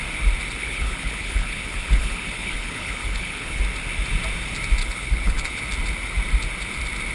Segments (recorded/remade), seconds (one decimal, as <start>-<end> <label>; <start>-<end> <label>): 0.0-0.6 recorded; 0.6-3.6 remade; 3.6-4.8 recorded; 4.8-5.6 remade; 5.6-7.1 recorded